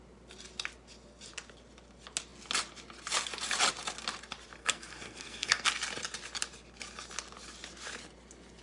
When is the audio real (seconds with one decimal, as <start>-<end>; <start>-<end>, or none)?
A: 0.0-4.6; 5.7-8.6